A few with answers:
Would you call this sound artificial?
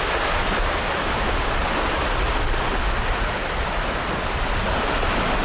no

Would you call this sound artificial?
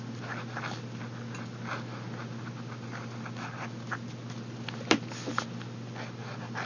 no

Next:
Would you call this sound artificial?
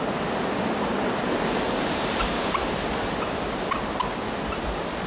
no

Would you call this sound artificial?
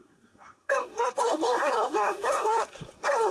yes